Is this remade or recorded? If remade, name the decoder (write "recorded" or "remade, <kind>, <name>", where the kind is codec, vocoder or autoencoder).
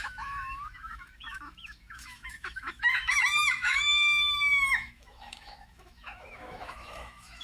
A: remade, autoencoder, DAC-VAE